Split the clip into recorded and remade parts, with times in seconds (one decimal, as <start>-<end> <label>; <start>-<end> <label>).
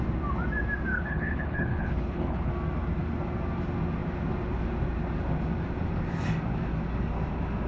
0.0-0.9 recorded; 0.9-2.5 remade; 2.5-7.7 recorded